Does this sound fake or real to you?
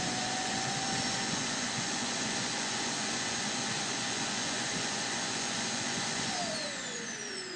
fake